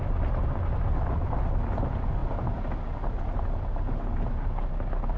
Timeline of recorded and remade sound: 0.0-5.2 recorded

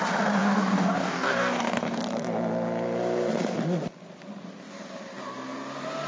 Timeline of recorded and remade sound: 0.0-0.4 recorded; 0.4-2.0 remade; 2.0-6.1 recorded

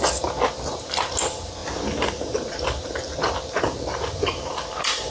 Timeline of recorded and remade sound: 0.0-5.1 recorded

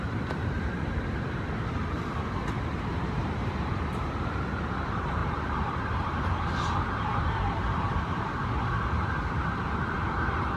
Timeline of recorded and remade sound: 0.0-10.6 remade

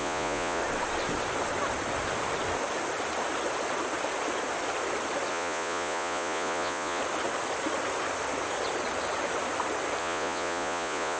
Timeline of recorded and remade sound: 0.0-0.6 remade; 0.6-5.3 recorded; 5.3-7.0 remade; 7.0-10.0 recorded; 10.0-11.2 remade

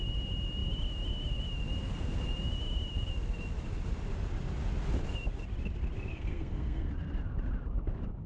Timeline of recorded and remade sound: 0.0-6.1 recorded; 6.1-6.9 remade; 6.9-8.3 recorded

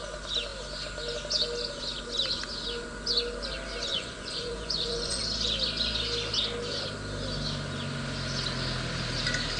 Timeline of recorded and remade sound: 0.0-3.9 recorded; 3.9-5.2 remade; 5.2-9.6 recorded